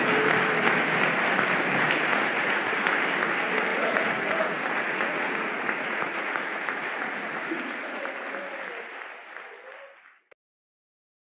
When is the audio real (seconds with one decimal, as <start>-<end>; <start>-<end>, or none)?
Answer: 0.0-2.1; 2.9-3.7; 8.1-11.3